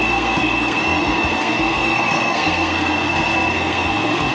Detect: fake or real fake